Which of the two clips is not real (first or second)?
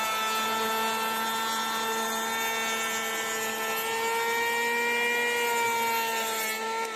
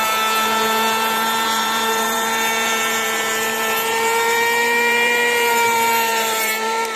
second